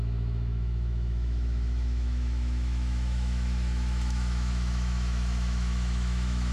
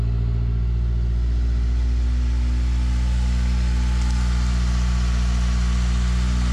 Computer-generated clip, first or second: first